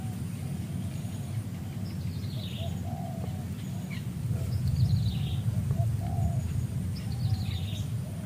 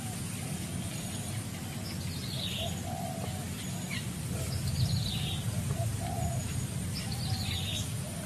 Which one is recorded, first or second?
first